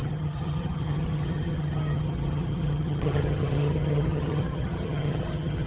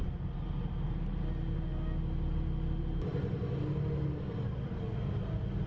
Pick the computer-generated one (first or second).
first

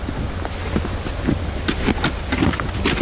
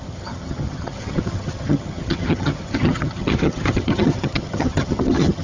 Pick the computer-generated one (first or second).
second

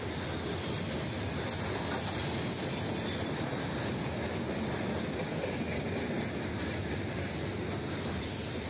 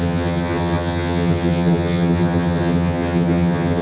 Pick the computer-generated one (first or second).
second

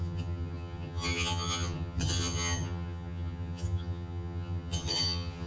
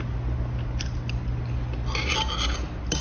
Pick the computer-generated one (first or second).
first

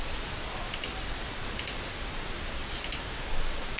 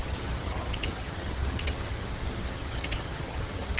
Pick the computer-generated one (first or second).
second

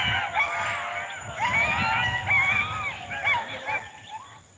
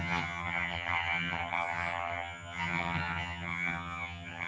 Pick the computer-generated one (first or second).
second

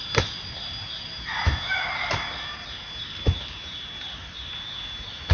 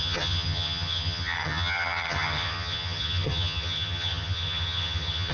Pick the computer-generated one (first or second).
second